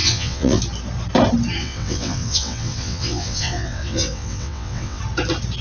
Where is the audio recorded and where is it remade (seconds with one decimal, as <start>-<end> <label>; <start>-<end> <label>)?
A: 0.0-0.6 remade; 0.6-1.6 recorded; 1.6-5.0 remade; 5.0-5.6 recorded